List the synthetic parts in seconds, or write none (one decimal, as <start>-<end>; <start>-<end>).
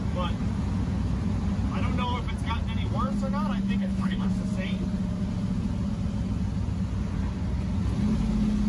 3.8-4.3